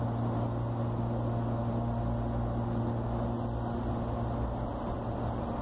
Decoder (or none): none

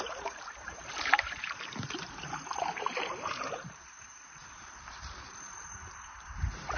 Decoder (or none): vocoder, BigVGAN v2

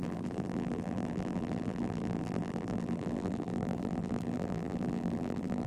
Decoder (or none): vocoder, BigVGAN v2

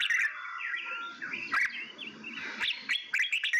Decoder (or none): vocoder, BigVGAN v2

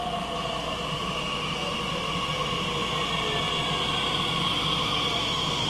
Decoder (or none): none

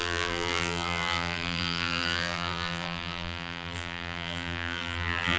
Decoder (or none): vocoder, BigVGAN v2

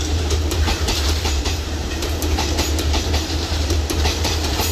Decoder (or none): vocoder, BigVGAN v2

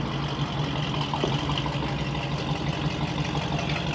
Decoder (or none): none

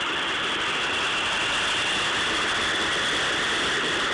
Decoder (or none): none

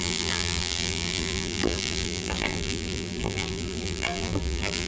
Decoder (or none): vocoder, BigVGAN v2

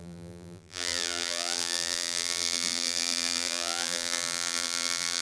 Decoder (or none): vocoder, BigVGAN v2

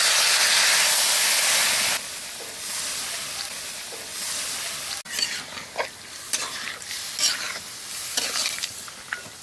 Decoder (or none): none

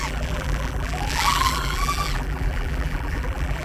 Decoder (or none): vocoder, BigVGAN v2